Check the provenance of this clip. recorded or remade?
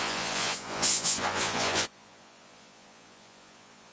remade